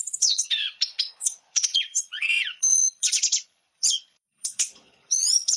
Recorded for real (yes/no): no